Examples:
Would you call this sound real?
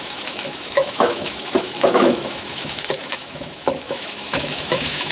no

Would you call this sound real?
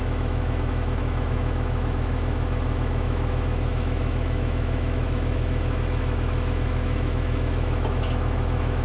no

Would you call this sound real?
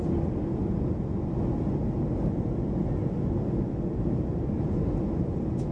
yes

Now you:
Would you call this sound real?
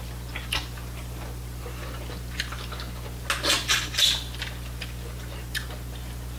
yes